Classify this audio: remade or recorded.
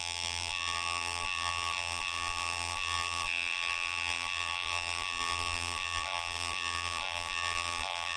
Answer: remade